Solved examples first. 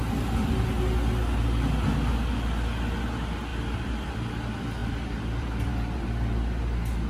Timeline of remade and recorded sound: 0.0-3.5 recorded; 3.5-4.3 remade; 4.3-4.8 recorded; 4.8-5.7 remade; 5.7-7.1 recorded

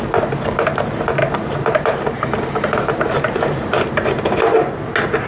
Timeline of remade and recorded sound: 0.0-1.2 recorded; 1.2-4.4 remade; 4.4-5.3 recorded

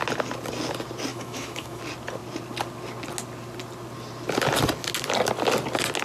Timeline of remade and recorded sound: 0.0-1.1 recorded; 1.1-1.8 remade; 1.8-6.0 recorded

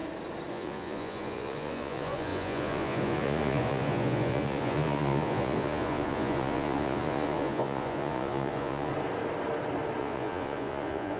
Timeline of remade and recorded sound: 0.0-0.5 recorded; 0.5-8.9 remade; 8.9-10.0 recorded; 10.0-11.2 remade

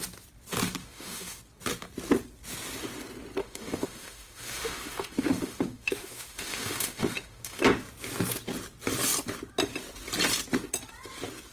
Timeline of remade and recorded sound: 0.0-0.8 recorded; 0.8-1.4 remade; 1.4-3.4 recorded; 3.4-7.6 remade; 7.6-11.5 recorded

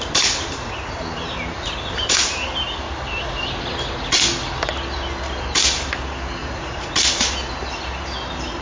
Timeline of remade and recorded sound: 0.0-6.4 recorded; 6.4-6.9 remade; 6.9-8.6 recorded